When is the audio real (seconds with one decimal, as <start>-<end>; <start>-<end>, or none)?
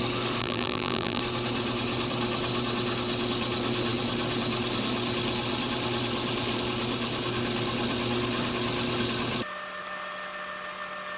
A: 0.0-0.4; 1.2-11.2